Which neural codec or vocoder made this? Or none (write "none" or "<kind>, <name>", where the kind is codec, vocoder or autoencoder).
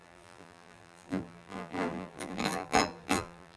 vocoder, BigVGAN v2